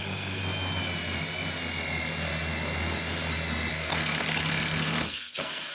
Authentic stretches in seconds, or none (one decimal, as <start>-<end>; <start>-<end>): 0.4-3.7